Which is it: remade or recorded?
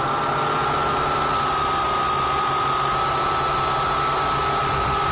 recorded